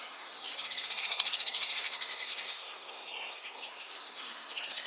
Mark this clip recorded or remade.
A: remade